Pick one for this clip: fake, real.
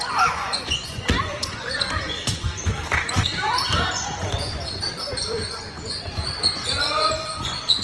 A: fake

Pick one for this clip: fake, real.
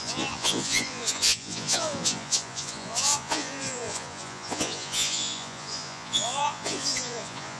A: fake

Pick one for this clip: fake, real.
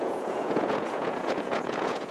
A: fake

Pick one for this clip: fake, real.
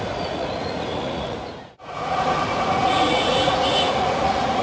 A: fake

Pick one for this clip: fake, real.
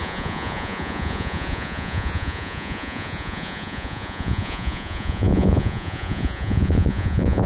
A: fake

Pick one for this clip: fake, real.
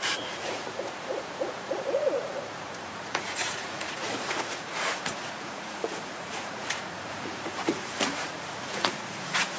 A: fake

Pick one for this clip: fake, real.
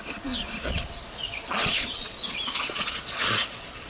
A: fake